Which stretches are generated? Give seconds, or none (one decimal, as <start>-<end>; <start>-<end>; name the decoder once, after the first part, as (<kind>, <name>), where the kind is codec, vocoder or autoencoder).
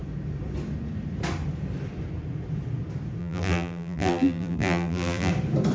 3.2-5.3 (vocoder, BigVGAN v2)